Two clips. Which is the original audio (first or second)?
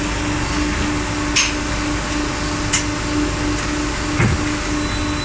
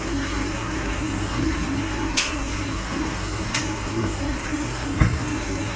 first